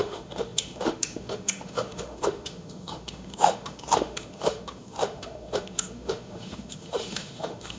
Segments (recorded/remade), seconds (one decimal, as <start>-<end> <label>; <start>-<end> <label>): 0.0-7.8 remade